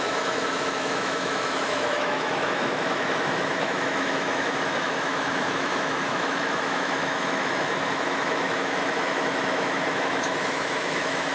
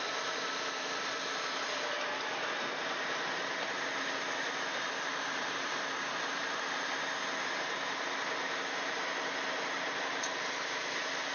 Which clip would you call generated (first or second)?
first